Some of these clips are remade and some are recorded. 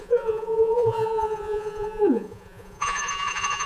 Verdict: remade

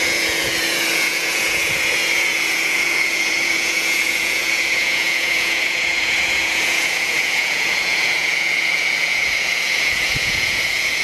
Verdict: remade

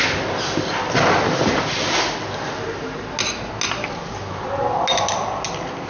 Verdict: recorded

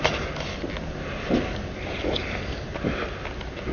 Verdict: recorded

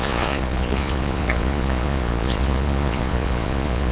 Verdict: remade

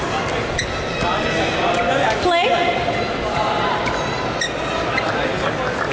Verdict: recorded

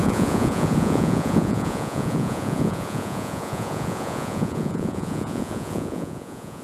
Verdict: remade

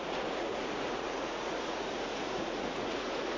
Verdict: remade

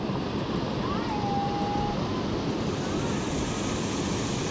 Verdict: recorded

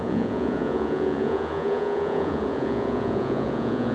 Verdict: remade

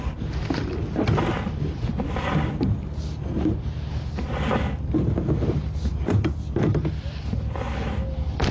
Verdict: recorded